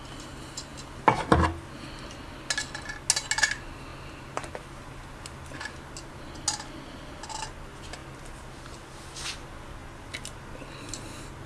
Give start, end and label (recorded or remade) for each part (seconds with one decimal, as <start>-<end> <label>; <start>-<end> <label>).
0.0-11.5 recorded